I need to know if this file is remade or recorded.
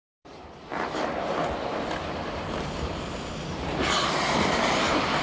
remade